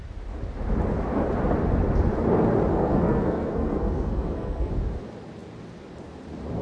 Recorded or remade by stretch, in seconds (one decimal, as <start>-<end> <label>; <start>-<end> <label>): 0.0-2.7 recorded; 2.7-4.7 remade; 4.7-6.6 recorded